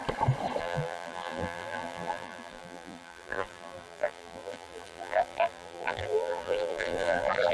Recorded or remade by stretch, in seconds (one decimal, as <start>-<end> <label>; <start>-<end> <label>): 0.0-0.6 recorded; 0.6-7.5 remade